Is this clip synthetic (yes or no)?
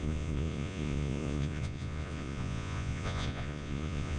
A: yes